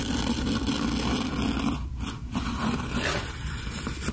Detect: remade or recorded recorded